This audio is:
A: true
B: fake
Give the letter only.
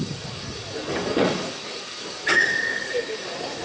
B